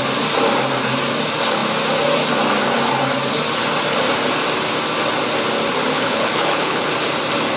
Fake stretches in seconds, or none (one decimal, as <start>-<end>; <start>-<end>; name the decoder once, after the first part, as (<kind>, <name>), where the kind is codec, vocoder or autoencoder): 5.9-6.9 (codec, HILCodec)